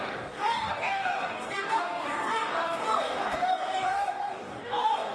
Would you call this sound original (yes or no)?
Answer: no